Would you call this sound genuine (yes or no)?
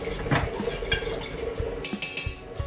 yes